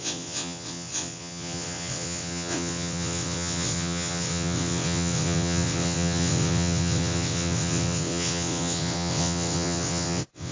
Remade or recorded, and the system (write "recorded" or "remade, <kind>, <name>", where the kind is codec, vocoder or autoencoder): remade, vocoder, WaveNeXt